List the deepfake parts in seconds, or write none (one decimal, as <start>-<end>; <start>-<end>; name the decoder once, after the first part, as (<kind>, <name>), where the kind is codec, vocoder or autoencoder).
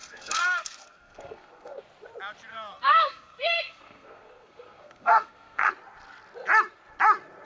0.0-1.8 (codec, SNAC); 2.5-5.7